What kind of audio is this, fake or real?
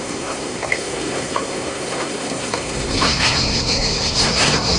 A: fake